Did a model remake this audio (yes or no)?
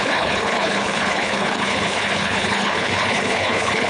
yes